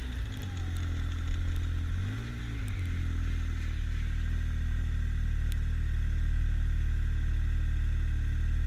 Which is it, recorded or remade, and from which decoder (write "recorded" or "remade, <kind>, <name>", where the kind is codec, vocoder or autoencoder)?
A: recorded